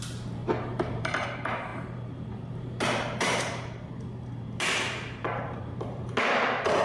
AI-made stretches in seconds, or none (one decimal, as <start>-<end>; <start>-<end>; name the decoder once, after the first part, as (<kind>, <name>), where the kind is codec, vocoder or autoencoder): 0.0-0.4 (vocoder, BigVGAN v2); 1.0-6.8